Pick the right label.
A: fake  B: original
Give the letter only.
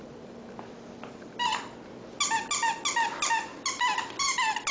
B